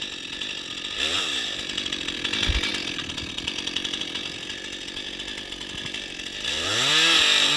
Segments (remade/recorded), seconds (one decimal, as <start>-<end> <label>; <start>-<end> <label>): 0.0-7.6 recorded